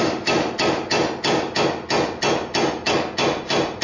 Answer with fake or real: real